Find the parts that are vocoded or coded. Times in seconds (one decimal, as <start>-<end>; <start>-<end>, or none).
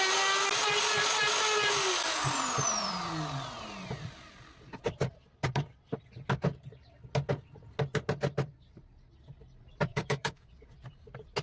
9.9-10.5